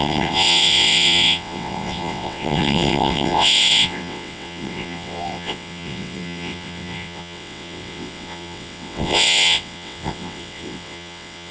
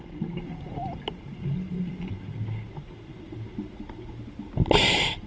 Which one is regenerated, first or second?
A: first